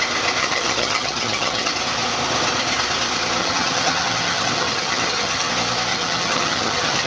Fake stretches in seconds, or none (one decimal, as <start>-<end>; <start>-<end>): 0.4-1.7; 3.4-5.5; 5.9-7.1